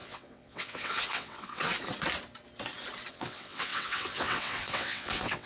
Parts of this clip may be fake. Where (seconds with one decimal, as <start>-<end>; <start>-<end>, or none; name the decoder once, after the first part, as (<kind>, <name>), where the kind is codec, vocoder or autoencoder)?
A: 0.0-1.7 (vocoder, WaveNeXt); 3.1-5.5

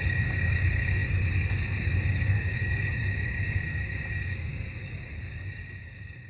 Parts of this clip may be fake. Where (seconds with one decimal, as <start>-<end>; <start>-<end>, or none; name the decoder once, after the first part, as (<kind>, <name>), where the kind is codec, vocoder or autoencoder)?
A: 0.0-6.3 (codec, DAC)

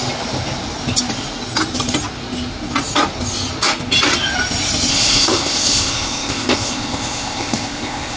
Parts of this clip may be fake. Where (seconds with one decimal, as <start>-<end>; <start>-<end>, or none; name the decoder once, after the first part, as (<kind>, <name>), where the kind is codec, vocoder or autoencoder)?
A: 4.9-8.2 (codec, ZipCodec)

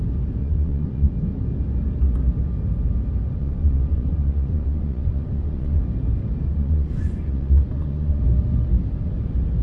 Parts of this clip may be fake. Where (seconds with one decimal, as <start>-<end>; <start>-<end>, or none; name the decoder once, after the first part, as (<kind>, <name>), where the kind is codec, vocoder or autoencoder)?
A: 0.4-1.1 (vocoder, Vocos); 3.4-5.8; 6.5-8.2

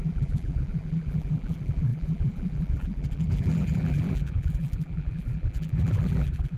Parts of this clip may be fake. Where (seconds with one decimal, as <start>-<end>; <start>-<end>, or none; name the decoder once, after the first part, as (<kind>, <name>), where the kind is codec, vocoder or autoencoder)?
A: 0.0-6.6 (vocoder, BigVGAN v2)

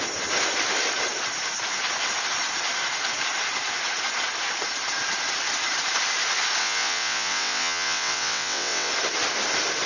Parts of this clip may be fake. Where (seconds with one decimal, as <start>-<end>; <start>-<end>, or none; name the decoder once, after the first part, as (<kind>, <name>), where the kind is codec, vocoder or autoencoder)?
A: 6.6-8.9 (vocoder, WaveNeXt)

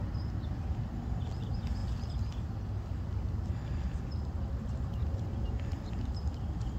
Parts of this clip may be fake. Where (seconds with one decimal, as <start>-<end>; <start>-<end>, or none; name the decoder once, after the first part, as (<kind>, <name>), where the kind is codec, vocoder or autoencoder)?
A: none